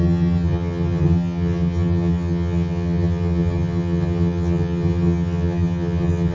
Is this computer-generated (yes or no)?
yes